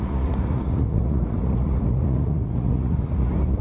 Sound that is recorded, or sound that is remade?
remade